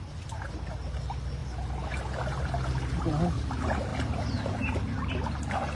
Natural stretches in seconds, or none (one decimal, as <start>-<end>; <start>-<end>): 0.0-5.8